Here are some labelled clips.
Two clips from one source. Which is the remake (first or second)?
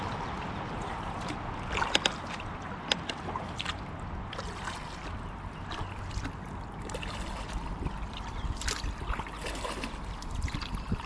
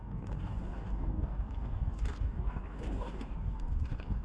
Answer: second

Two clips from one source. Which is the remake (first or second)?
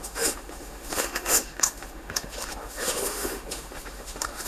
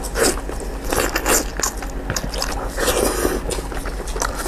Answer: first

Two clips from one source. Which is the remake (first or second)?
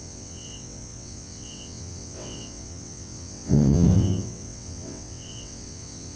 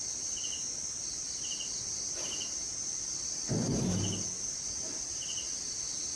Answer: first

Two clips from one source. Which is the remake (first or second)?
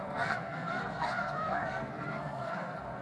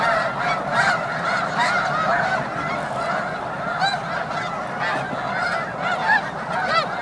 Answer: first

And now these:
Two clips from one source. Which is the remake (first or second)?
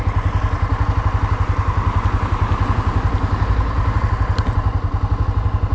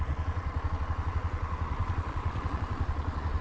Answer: second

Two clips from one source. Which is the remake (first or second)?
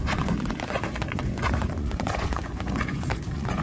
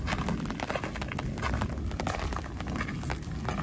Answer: first